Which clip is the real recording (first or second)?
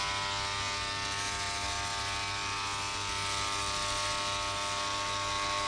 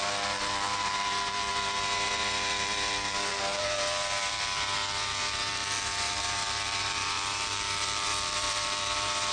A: first